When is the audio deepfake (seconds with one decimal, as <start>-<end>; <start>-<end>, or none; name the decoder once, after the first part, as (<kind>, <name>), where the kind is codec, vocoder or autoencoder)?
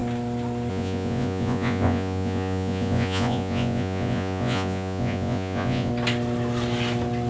0.7-5.9 (vocoder, Vocos)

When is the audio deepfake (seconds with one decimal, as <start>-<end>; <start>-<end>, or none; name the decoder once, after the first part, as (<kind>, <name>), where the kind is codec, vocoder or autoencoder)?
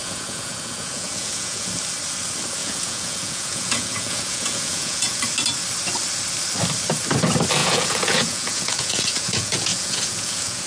0.0-1.7 (vocoder, Vocos); 2.6-5.2; 7.6-10.7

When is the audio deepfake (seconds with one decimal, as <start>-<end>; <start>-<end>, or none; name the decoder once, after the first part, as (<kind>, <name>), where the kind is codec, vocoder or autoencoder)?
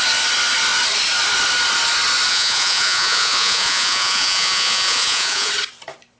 2.3-5.5 (vocoder, Vocos)